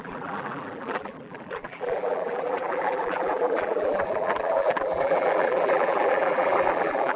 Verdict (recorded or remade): remade